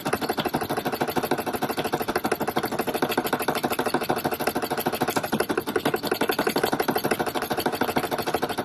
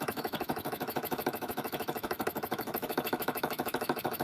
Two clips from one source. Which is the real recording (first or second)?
first